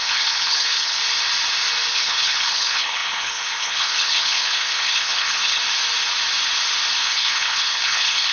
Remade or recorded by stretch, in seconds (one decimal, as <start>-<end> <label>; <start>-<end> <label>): 0.0-1.0 remade; 1.0-1.9 recorded; 1.9-5.6 remade; 5.6-7.0 recorded; 7.0-8.3 remade